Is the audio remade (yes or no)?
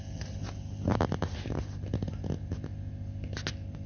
no